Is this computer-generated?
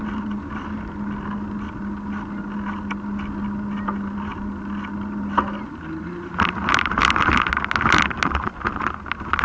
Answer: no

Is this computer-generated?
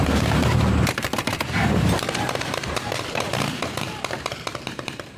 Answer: yes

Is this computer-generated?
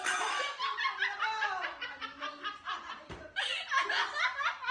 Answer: no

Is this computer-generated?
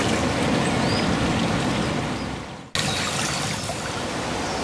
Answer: no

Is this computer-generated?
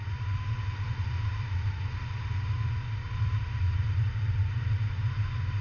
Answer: no